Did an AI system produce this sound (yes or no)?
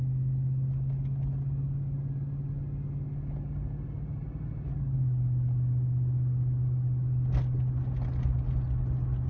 no